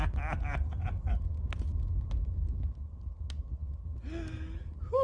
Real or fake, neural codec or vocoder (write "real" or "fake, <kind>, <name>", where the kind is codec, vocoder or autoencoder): real